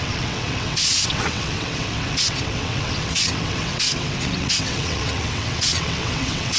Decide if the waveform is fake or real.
fake